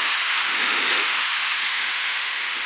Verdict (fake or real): fake